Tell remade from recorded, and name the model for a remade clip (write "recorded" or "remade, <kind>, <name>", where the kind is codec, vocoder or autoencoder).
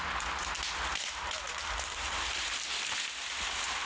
recorded